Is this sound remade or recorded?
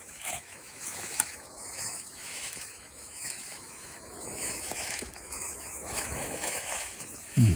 remade